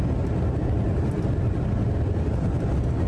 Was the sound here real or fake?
real